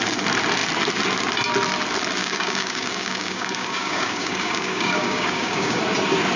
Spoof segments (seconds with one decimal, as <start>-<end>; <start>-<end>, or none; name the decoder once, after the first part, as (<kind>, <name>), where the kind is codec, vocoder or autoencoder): 2.2-5.8 (codec, DAC)